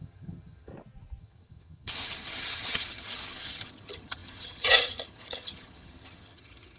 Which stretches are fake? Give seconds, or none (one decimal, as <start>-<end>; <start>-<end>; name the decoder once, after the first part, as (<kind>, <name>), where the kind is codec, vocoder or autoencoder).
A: 0.0-0.7 (vocoder, HiFi-GAN); 1.2-6.8